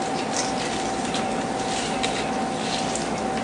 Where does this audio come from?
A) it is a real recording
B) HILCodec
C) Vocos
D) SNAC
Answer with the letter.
A